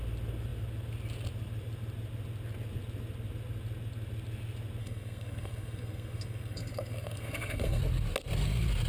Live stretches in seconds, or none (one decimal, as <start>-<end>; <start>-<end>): 0.0-4.8; 7.8-8.9